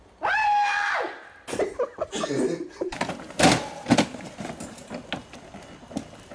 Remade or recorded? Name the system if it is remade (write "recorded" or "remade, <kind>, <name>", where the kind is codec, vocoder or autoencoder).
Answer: recorded